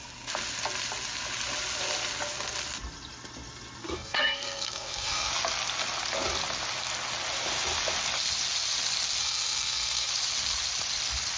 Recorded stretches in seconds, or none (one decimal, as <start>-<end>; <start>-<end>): 0.0-3.8; 5.3-9.2; 10.1-11.4